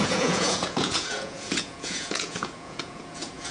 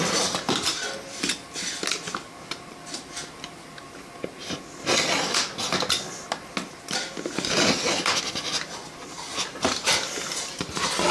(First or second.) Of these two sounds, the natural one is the second